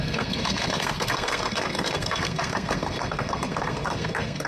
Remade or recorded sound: remade